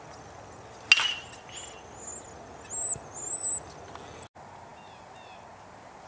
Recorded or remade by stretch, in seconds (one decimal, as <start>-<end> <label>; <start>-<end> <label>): 0.0-6.1 recorded